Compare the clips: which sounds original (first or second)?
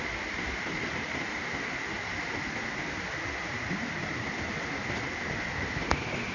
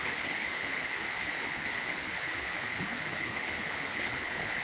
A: first